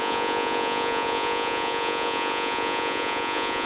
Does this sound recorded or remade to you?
remade